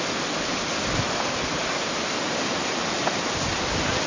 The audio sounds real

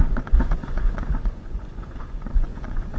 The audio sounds fake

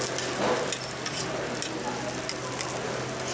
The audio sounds real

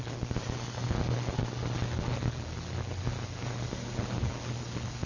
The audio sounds real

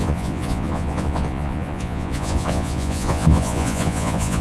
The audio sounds fake